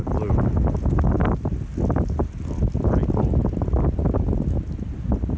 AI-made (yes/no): no